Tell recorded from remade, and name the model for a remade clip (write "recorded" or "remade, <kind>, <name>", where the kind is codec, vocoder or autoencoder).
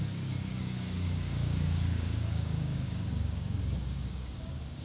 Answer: remade, codec, DAC